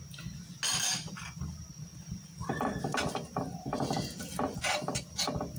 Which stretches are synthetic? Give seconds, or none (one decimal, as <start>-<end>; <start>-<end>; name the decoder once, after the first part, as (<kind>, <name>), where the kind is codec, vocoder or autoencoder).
none